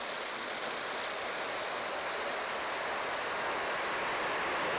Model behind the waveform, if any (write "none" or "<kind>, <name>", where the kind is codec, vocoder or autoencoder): none